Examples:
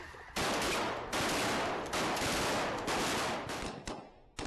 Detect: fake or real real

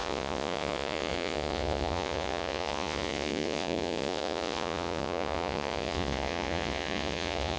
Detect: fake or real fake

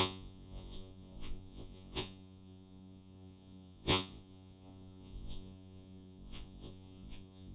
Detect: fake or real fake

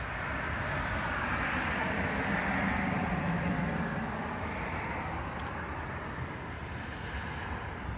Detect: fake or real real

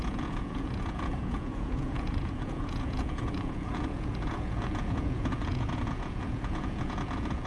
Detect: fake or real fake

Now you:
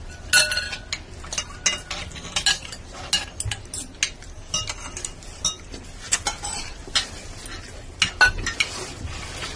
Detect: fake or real real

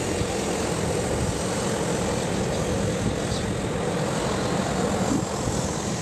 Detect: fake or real real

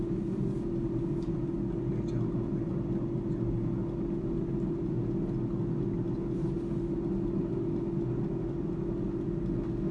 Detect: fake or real real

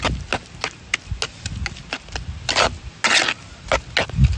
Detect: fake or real real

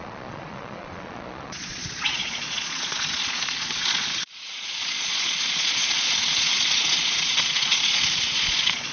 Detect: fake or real fake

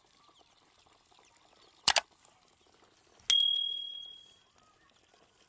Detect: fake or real real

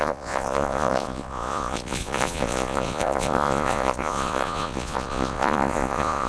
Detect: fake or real fake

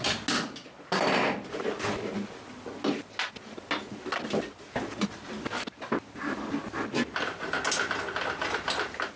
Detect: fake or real real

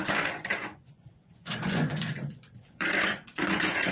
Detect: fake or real fake